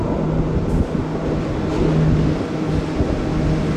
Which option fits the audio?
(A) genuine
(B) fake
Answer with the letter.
A